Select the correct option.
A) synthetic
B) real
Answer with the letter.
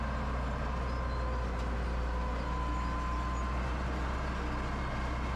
B